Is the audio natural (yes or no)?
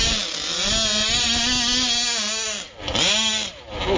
yes